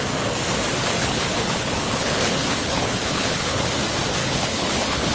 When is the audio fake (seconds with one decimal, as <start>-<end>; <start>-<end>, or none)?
1.0-3.7; 4.2-5.1